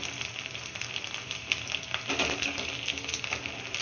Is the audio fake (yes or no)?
no